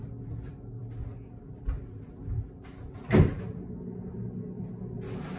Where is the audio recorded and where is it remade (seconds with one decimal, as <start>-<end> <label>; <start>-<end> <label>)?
0.0-5.4 recorded